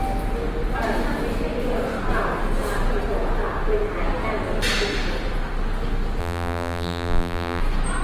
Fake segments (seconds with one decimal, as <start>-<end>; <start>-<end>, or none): 6.2-7.6